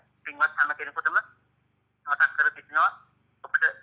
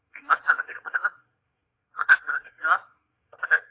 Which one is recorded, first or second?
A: first